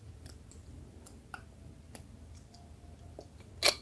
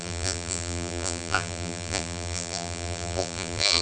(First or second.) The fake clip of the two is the second